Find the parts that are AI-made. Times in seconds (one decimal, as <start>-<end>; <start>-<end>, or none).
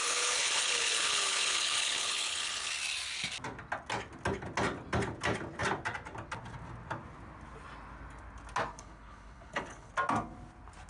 0.0-2.7; 8.7-9.9